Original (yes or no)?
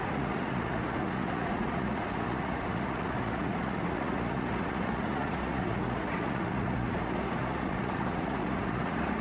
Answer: no